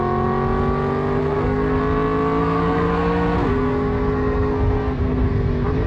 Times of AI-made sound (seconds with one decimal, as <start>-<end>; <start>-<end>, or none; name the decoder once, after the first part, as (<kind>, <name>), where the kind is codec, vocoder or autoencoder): 1.2-1.8 (codec, SNAC); 2.4-5.5

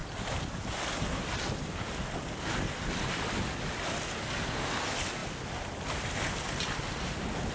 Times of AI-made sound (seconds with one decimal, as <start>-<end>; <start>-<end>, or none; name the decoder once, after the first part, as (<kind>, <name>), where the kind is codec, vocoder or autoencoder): none

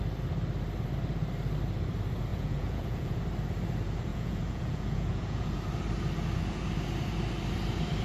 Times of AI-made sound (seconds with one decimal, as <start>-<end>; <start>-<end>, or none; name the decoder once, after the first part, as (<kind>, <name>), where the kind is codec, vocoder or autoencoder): 2.3-3.2 (vocoder, Vocos); 4.1-5.6

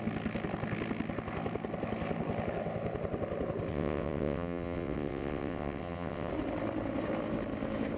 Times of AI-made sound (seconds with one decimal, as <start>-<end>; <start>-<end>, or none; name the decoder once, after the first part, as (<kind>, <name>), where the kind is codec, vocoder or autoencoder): 3.7-6.3 (vocoder, WaveNeXt)